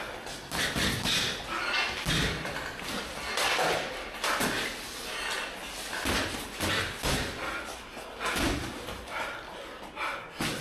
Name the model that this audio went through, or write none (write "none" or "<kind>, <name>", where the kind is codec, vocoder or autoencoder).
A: none